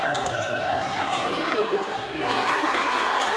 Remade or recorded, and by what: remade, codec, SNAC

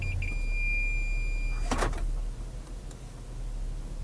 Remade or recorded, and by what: recorded